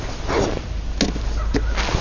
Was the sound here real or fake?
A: real